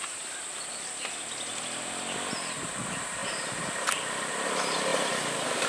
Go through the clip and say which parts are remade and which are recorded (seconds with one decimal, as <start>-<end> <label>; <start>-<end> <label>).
0.0-5.7 recorded